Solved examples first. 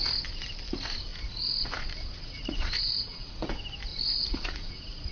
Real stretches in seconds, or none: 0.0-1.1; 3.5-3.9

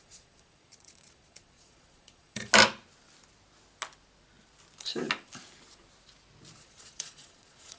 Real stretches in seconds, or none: 2.5-6.6